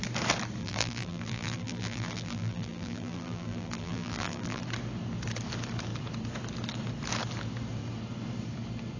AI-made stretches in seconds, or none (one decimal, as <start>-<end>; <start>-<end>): 0.6-4.6